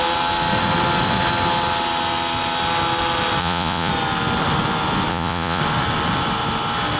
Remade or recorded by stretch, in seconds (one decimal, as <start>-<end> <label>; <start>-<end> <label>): 0.0-3.4 recorded; 3.4-3.9 remade; 3.9-5.1 recorded; 5.1-5.6 remade; 5.6-7.0 recorded